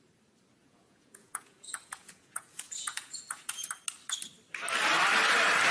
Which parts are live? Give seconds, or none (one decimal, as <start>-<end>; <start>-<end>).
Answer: 0.0-0.6; 3.7-5.7